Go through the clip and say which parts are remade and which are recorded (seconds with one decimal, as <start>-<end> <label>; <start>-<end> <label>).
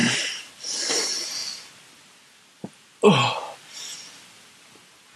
0.0-1.4 remade; 1.4-4.5 recorded; 4.5-5.2 remade